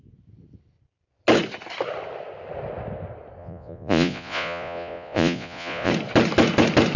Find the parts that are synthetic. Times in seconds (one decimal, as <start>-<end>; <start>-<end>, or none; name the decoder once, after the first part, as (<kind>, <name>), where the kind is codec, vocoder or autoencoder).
3.4-5.9 (vocoder, Vocos)